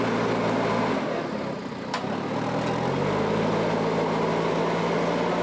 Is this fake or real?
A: real